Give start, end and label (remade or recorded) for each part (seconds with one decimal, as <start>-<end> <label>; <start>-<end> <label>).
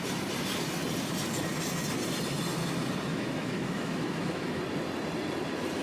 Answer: 0.0-3.1 recorded; 3.1-4.6 remade; 4.6-5.8 recorded